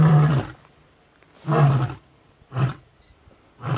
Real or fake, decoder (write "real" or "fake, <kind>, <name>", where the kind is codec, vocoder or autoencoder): fake, vocoder, BigVGAN v2